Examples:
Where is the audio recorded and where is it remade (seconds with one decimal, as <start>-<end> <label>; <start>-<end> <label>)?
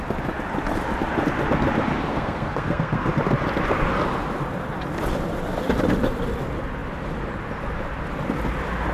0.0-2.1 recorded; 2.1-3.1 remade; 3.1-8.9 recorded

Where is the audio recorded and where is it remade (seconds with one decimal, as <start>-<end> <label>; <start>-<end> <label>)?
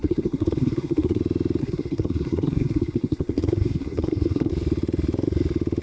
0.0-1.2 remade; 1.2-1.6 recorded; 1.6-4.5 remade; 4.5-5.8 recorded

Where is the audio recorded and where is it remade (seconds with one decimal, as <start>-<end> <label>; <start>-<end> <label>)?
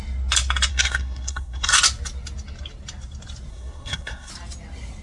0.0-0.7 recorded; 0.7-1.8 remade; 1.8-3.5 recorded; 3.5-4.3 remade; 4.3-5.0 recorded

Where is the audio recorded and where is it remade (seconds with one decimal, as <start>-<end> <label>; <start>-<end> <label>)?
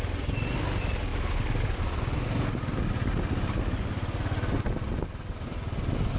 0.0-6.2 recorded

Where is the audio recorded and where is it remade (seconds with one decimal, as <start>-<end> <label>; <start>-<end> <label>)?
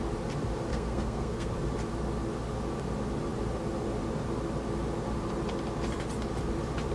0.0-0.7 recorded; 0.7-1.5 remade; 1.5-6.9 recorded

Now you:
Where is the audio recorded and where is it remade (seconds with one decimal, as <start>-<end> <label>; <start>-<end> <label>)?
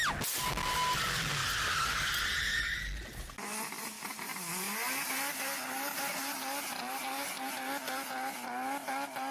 0.0-9.3 recorded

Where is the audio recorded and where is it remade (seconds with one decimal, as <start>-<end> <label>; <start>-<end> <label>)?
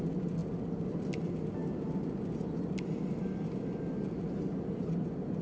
0.0-5.4 recorded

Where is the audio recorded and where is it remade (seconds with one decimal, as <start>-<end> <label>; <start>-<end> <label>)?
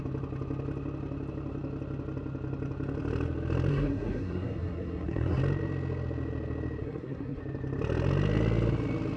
0.0-3.7 recorded; 3.7-5.4 remade; 5.4-6.8 recorded; 6.8-7.4 remade; 7.4-9.2 recorded